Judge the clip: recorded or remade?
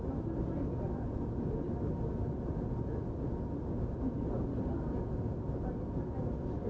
recorded